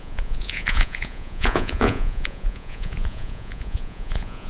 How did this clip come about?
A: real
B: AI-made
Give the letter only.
B